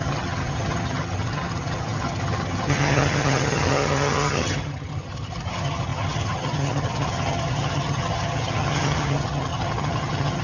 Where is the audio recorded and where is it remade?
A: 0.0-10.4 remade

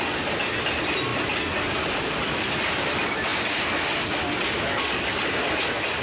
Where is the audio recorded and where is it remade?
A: 0.0-6.0 recorded

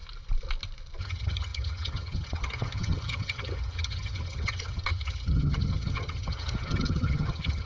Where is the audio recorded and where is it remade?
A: 0.0-1.0 recorded; 1.0-7.7 remade

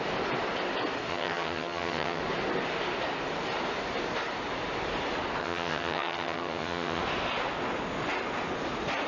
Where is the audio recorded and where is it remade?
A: 0.0-1.1 recorded; 1.1-2.2 remade; 2.2-5.4 recorded; 5.4-7.0 remade; 7.0-9.1 recorded

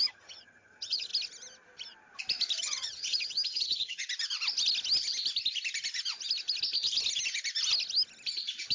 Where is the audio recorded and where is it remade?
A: 0.0-1.1 remade; 1.1-2.6 recorded; 2.6-4.0 remade; 4.0-8.7 recorded

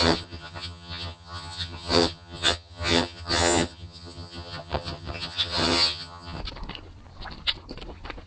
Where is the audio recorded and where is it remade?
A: 0.0-6.4 remade; 6.4-8.3 recorded

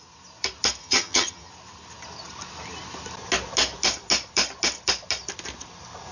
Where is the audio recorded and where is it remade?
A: 0.0-0.8 recorded; 0.8-1.5 remade; 1.5-6.1 recorded

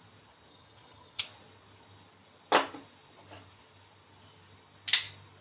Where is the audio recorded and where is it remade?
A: 0.0-0.5 recorded; 0.5-1.2 remade; 1.2-5.4 recorded